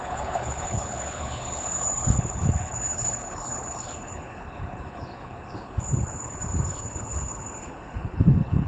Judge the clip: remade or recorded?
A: remade